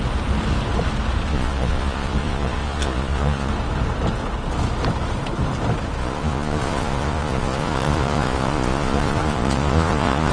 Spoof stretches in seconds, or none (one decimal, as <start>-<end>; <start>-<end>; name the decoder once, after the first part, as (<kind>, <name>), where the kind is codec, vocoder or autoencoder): 1.3-3.5 (vocoder, Vocos); 6.0-10.3